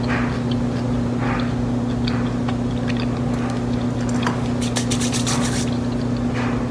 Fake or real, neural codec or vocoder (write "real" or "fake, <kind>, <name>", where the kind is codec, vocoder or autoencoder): real